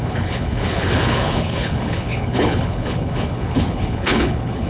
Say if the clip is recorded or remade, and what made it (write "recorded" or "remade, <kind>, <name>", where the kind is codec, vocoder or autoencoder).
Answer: remade, codec, HILCodec